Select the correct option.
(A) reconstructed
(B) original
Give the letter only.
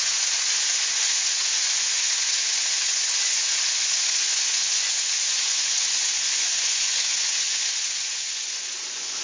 A